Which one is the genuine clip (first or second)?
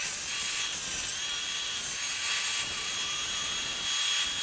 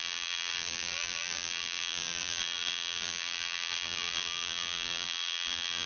first